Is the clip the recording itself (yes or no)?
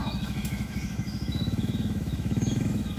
no